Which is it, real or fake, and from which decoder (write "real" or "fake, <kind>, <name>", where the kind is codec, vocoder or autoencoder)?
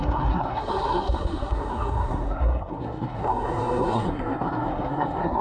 fake, codec, SNAC